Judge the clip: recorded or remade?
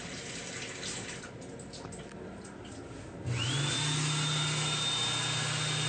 recorded